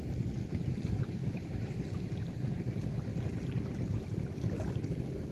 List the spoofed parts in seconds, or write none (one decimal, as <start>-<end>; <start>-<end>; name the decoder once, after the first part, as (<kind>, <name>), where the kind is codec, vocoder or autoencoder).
1.2-1.7 (autoencoder, DAC-VAE)